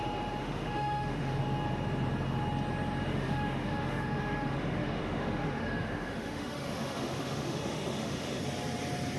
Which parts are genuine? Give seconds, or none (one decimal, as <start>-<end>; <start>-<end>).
0.0-0.4; 1.4-3.1; 8.4-9.2